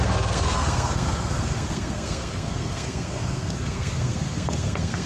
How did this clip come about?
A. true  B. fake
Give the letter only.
B